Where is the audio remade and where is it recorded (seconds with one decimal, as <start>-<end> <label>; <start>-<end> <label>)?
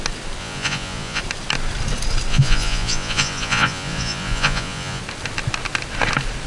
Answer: 0.0-0.4 recorded; 0.4-1.2 remade; 1.2-2.3 recorded; 2.3-5.0 remade; 5.0-6.5 recorded